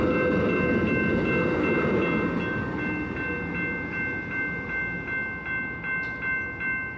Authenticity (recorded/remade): recorded